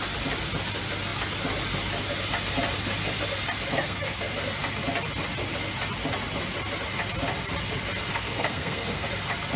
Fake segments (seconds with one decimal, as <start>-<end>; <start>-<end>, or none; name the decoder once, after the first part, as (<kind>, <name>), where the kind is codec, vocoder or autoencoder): 3.7-4.3 (codec, SNAC); 8.1-9.1